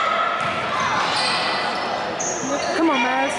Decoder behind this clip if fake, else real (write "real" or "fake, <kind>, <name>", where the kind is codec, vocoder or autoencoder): real